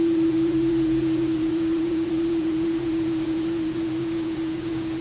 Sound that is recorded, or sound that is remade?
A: remade